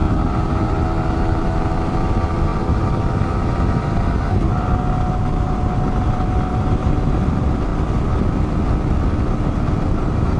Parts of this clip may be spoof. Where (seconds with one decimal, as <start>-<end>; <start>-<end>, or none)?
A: 0.0-7.7; 9.9-10.4